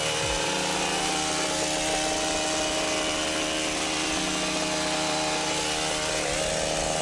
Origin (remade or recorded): recorded